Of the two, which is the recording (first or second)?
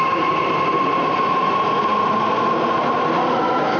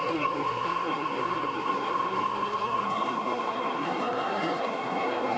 first